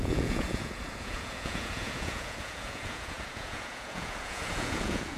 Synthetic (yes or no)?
yes